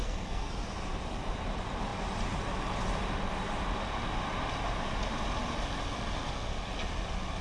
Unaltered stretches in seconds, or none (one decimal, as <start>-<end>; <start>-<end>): 0.5-7.4